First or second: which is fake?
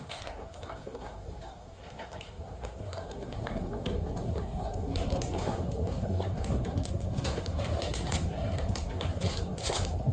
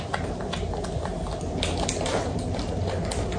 first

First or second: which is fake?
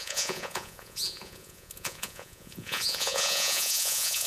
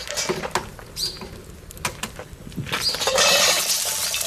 first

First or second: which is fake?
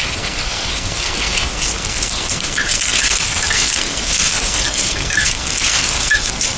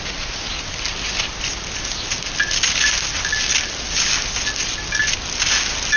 first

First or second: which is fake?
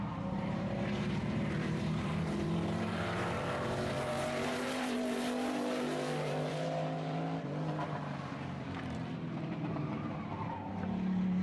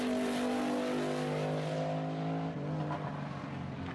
first